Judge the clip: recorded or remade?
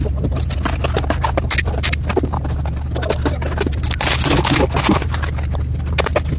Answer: recorded